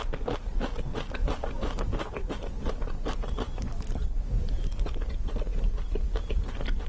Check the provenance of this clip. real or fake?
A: real